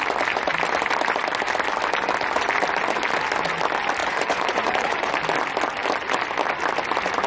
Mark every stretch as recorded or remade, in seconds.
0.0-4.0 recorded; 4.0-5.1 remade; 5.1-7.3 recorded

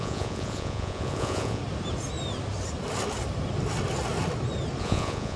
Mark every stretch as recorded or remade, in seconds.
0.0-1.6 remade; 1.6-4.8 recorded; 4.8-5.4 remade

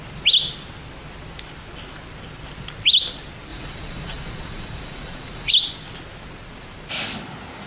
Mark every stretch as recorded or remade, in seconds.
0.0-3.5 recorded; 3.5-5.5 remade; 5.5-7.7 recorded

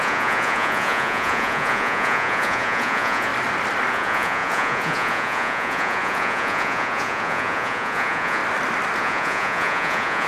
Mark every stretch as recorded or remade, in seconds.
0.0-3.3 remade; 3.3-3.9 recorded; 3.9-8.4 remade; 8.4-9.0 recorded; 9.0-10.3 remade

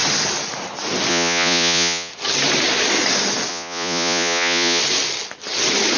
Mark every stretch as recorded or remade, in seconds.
0.0-1.1 recorded; 1.1-2.1 remade; 2.1-3.5 recorded; 3.5-4.8 remade; 4.8-6.0 recorded

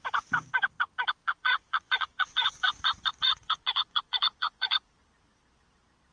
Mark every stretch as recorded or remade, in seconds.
0.0-1.2 recorded; 1.2-4.9 remade; 4.9-6.1 recorded

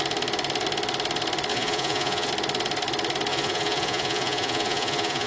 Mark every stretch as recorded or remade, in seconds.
0.0-1.5 recorded; 1.5-2.3 remade; 2.3-3.3 recorded; 3.3-5.3 remade